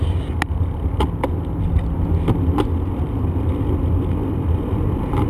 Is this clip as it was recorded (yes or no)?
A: yes